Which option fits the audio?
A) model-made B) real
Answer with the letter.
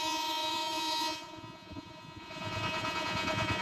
A